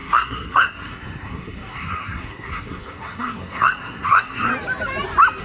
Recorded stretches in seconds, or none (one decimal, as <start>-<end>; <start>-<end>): 4.5-5.4